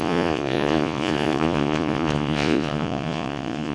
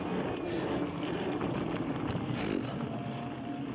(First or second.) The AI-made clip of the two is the first